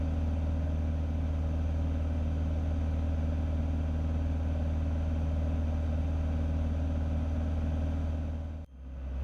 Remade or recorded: recorded